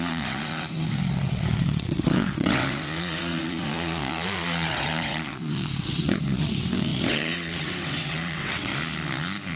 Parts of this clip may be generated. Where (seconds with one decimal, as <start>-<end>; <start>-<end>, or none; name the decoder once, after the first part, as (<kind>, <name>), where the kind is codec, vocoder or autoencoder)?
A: 0.0-8.7 (vocoder, WaveNeXt)